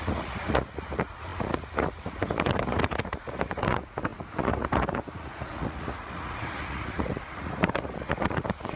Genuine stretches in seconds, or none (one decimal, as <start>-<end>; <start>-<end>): none